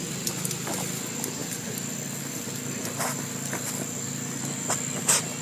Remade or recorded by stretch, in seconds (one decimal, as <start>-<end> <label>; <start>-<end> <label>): 0.0-5.4 recorded